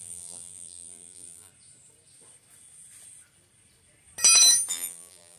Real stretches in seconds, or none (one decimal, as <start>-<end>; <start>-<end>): 1.5-4.7